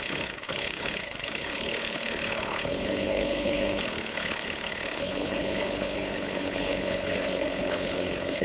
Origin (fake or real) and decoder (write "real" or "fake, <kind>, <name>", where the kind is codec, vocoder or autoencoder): fake, codec, HILCodec